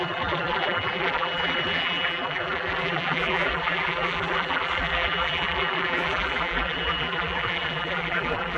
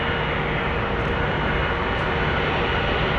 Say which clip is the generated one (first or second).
first